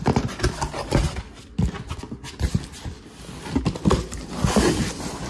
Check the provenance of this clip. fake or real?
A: real